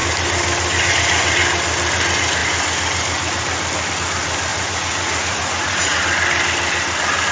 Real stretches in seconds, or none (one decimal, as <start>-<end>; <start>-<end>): 0.0-4.5; 6.0-7.3

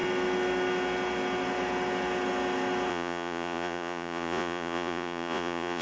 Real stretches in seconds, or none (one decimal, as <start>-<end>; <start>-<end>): 0.0-2.9